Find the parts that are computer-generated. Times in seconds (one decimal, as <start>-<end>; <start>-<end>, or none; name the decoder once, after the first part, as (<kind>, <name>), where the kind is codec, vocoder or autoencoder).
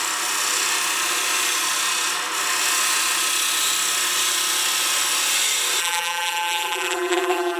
5.8-7.6 (vocoder, BigVGAN v2)